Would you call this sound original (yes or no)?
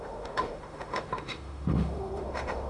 no